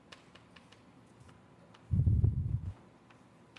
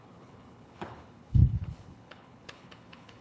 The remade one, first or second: second